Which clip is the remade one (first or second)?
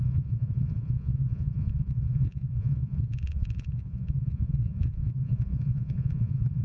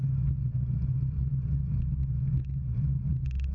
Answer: first